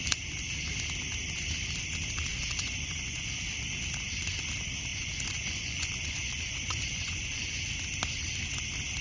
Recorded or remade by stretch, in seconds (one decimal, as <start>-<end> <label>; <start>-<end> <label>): 0.0-2.3 recorded; 2.3-3.3 remade; 3.3-4.9 recorded; 4.9-7.6 remade; 7.6-9.0 recorded